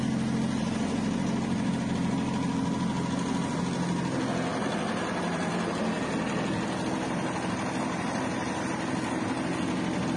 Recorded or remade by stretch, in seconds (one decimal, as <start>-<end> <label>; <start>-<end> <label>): 0.0-0.6 recorded; 0.6-1.8 remade; 1.8-4.5 recorded; 4.5-5.7 remade; 5.7-10.2 recorded